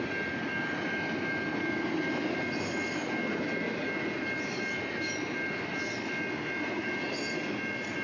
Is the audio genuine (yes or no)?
yes